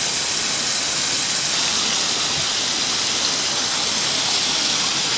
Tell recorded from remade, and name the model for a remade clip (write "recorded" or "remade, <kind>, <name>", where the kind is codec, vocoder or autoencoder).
recorded